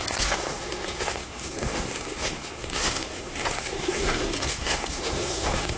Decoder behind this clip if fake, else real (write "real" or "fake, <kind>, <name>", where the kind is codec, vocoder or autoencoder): fake, codec, SNAC